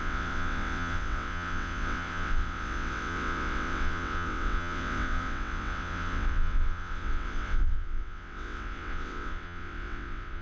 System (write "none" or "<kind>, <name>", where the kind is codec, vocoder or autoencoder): vocoder, WaveNeXt